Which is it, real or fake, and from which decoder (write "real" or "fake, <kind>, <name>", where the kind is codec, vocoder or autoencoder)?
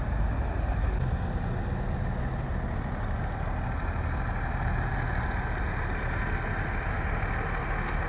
real